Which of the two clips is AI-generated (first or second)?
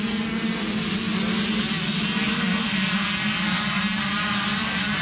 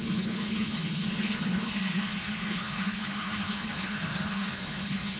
second